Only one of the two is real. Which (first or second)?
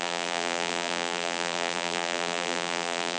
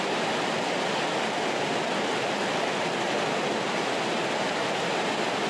second